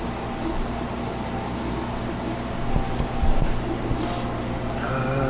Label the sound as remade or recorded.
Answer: recorded